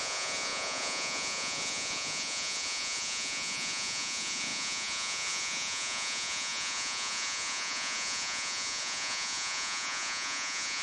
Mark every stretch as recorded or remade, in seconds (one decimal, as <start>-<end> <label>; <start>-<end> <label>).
0.0-10.8 remade